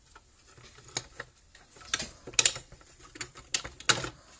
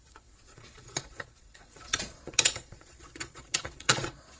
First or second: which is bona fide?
first